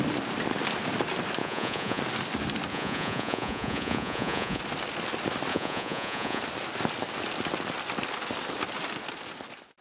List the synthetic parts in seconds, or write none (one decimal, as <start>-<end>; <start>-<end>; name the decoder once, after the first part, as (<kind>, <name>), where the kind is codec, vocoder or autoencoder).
1.4-2.0 (vocoder, Vocos); 2.7-4.6; 5.5-6.4